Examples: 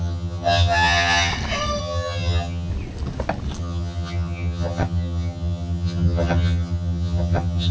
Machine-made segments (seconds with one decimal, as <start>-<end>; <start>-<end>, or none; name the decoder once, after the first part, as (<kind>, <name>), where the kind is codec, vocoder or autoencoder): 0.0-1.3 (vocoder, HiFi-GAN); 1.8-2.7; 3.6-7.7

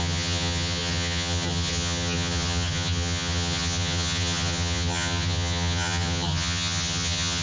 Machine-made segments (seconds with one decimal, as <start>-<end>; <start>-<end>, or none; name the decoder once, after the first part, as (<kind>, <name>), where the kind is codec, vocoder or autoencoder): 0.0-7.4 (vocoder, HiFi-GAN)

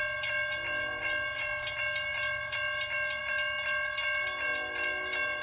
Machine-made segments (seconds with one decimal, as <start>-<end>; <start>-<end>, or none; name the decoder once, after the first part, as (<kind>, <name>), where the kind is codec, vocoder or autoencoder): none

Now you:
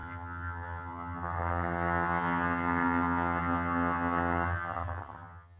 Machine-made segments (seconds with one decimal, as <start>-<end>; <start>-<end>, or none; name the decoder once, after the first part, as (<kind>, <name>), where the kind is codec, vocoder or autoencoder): 0.0-5.6 (vocoder, HiFi-GAN)

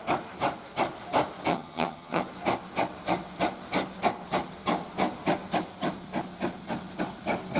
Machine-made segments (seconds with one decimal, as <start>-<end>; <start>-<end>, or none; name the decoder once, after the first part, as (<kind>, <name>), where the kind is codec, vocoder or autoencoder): 1.5-2.2 (vocoder, HiFi-GAN)

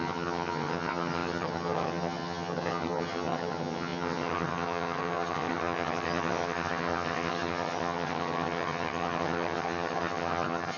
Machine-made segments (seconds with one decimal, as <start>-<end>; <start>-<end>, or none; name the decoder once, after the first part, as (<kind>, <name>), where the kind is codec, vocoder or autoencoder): 0.0-10.8 (vocoder, HiFi-GAN)

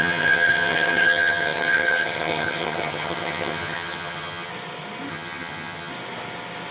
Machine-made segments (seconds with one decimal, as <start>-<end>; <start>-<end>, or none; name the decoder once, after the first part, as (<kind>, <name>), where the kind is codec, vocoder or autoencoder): 0.0-4.5 (vocoder, HiFi-GAN); 5.1-5.9